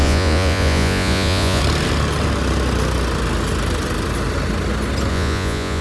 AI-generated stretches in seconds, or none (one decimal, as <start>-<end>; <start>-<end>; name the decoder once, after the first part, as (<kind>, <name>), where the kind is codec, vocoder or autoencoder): 0.0-1.6 (vocoder, Vocos); 5.1-5.8